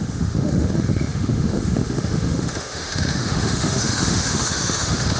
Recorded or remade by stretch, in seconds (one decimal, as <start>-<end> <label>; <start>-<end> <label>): 0.0-5.2 remade